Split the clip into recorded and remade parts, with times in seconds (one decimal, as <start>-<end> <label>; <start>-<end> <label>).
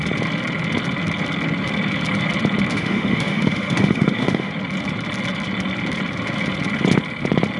0.0-2.7 recorded; 2.7-4.5 remade; 4.5-7.6 recorded